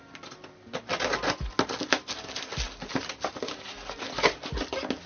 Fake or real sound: real